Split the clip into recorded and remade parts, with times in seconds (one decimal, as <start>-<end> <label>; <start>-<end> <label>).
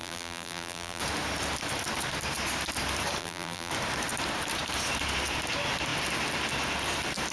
0.0-1.0 remade; 1.0-3.2 recorded; 3.2-3.7 remade; 3.7-7.3 recorded